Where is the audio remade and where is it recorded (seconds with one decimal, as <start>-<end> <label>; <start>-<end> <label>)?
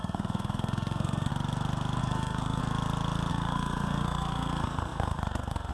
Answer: 0.0-1.3 remade; 1.3-2.0 recorded; 2.0-2.6 remade; 2.6-3.3 recorded; 3.3-5.7 remade